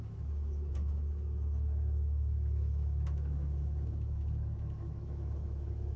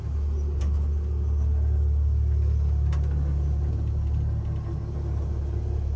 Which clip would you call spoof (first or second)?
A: first